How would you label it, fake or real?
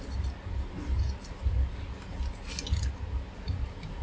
real